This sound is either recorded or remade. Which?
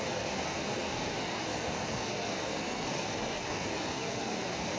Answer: remade